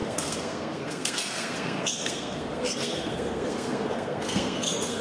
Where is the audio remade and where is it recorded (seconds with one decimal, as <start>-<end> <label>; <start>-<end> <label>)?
0.0-5.0 remade